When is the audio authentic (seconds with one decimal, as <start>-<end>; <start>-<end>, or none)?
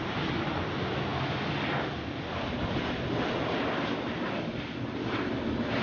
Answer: 0.0-5.8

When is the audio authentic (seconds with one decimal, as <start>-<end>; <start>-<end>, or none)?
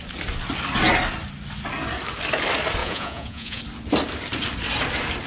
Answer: 0.0-2.8; 3.6-5.3